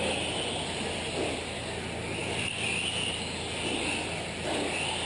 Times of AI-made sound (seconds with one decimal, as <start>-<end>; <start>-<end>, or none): none